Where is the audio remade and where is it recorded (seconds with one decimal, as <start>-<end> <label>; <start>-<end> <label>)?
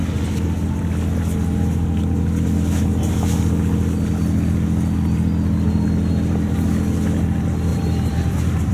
0.0-7.7 recorded; 7.7-8.7 remade